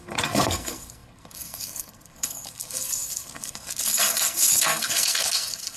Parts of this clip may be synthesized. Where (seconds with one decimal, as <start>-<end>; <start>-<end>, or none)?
0.0-5.8